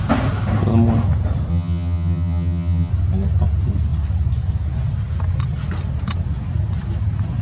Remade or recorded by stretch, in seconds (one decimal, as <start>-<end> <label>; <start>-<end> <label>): 0.0-1.5 recorded; 1.5-2.9 remade; 2.9-7.4 recorded